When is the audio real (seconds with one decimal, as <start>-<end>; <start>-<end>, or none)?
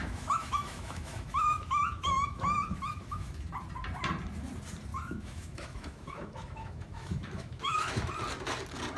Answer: 3.5-4.9; 8.1-9.0